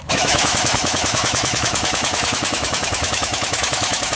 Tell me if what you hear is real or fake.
fake